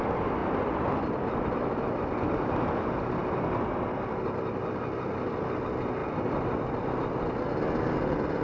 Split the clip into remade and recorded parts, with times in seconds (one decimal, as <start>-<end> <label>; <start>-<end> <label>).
0.0-8.4 recorded